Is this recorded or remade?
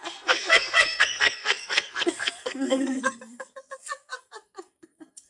remade